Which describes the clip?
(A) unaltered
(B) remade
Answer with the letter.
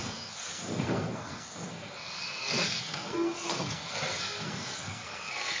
B